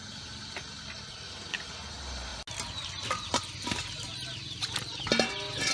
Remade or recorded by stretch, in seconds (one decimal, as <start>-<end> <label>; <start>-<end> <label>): 0.0-5.7 recorded